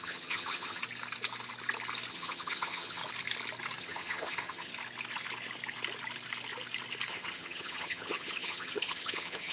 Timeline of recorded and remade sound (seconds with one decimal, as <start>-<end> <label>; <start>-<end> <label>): 0.0-0.8 remade; 0.8-2.1 recorded; 2.1-3.0 remade; 3.0-3.8 recorded; 3.8-4.7 remade; 4.7-7.1 recorded; 7.1-9.5 remade